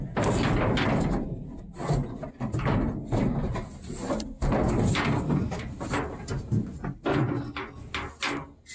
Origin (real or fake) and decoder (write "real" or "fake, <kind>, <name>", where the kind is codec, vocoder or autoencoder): real